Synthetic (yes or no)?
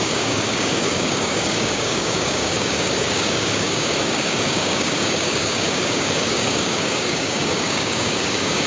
yes